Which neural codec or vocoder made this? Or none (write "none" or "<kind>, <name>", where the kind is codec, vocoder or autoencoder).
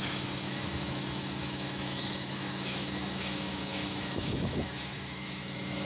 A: autoencoder, DAC-VAE